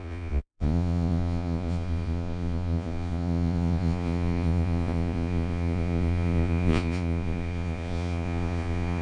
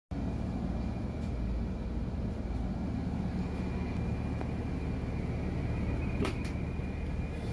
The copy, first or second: first